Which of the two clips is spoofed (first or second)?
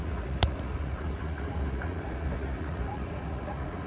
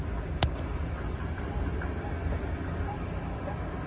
first